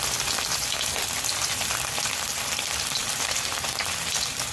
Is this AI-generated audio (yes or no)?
yes